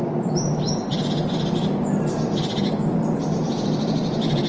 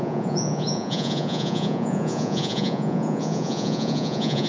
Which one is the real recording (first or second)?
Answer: first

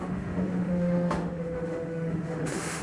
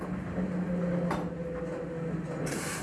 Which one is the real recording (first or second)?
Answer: second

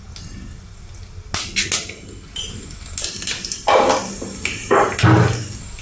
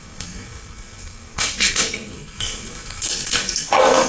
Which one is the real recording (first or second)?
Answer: first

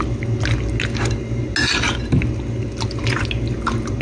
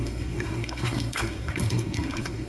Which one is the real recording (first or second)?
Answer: first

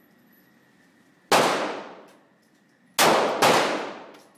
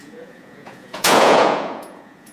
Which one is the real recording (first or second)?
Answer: first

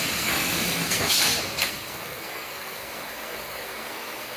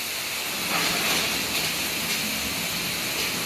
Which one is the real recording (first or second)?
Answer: second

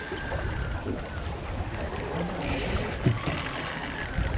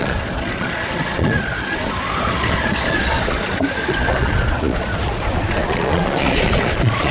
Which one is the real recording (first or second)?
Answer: first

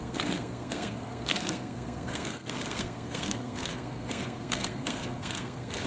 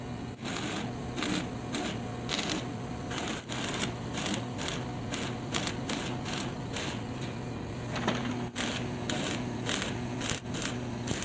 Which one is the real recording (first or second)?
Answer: second